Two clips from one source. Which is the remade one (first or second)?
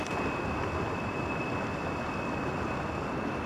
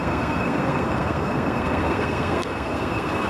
second